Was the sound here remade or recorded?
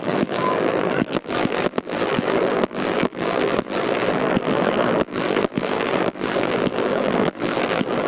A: remade